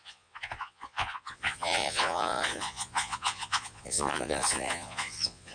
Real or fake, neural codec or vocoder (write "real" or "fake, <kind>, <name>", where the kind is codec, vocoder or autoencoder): fake, vocoder, Vocos